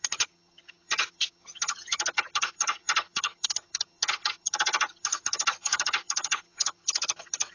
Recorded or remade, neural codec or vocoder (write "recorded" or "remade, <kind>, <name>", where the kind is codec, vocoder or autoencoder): remade, vocoder, HiFi-GAN